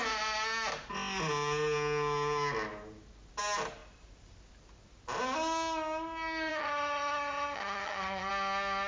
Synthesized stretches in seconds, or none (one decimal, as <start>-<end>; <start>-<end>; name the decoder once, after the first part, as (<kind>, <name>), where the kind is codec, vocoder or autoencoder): 6.5-8.3 (vocoder, HiFi-GAN)

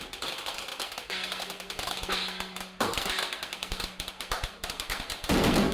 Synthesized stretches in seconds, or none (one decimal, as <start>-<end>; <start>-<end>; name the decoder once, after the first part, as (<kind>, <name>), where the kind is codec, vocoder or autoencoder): 0.0-5.7 (codec, SNAC)

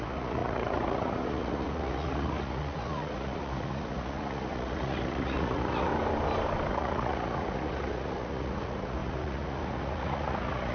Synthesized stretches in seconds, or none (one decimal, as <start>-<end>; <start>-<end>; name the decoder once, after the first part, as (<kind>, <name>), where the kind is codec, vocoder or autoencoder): 0.0-5.9 (vocoder, Vocos); 6.7-10.7

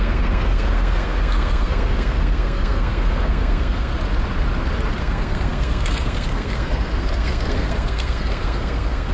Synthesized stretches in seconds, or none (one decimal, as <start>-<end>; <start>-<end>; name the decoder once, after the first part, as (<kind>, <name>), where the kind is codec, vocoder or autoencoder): 0.0-3.9 (codec, SNAC); 5.0-9.1

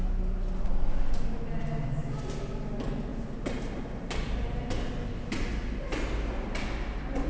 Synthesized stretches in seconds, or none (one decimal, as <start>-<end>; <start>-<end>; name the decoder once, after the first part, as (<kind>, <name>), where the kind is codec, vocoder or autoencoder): 3.1-3.9 (vocoder, BigVGAN v2)

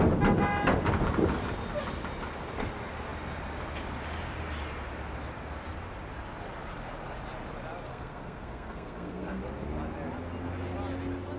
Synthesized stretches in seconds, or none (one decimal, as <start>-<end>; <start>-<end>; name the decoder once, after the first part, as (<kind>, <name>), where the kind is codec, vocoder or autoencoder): 7.9-9.4 (codec, SNAC)